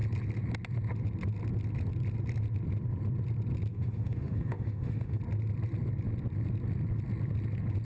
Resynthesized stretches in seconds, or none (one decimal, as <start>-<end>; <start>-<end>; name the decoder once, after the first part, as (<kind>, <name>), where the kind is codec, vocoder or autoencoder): 3.7-5.2 (autoencoder, DAC-VAE)